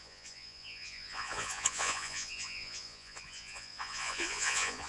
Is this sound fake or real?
fake